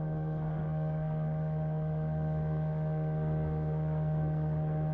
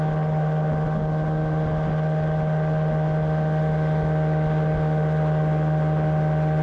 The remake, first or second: first